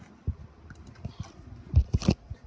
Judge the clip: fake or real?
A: real